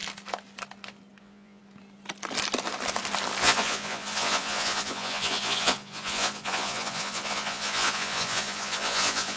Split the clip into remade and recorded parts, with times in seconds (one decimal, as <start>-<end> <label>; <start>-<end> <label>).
0.0-1.2 recorded; 1.2-1.6 remade; 1.6-3.4 recorded; 3.4-9.4 remade